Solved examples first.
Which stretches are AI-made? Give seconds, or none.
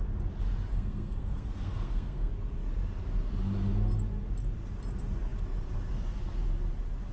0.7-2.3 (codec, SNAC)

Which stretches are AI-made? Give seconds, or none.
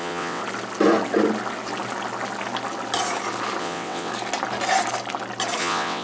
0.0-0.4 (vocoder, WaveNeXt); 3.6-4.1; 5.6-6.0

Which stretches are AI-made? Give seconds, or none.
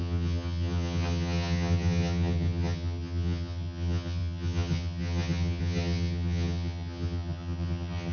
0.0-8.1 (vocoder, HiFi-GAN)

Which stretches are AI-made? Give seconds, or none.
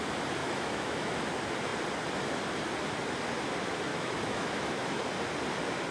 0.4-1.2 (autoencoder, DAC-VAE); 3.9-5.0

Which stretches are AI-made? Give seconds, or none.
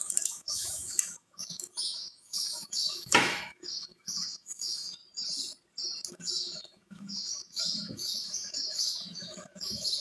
0.0-5.0 (autoencoder, DAC-VAE); 6.1-10.0